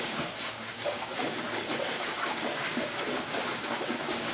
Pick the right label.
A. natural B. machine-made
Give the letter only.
B